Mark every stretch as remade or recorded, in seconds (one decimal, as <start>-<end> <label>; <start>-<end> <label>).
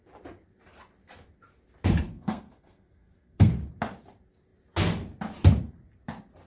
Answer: 0.0-2.1 recorded; 2.1-3.5 remade; 3.5-6.5 recorded